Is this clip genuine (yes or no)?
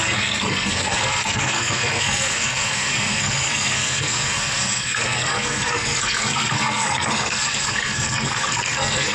no